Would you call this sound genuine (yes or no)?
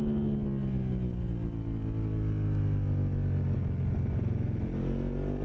yes